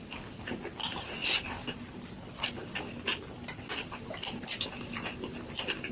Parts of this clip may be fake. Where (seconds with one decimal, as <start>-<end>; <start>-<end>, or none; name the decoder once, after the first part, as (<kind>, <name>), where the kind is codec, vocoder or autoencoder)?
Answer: none